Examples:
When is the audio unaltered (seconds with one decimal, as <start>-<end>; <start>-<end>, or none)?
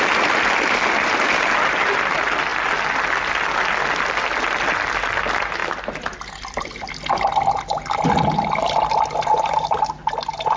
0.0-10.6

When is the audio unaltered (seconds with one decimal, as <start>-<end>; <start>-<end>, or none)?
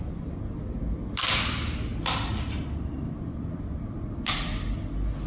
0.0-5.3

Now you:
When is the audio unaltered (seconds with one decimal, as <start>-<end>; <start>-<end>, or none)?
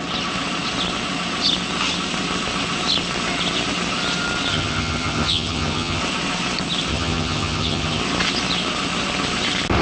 0.0-4.5; 6.0-6.9; 8.0-9.8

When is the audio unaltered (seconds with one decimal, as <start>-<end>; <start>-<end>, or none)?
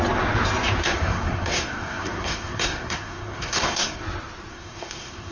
0.0-0.8; 4.0-4.5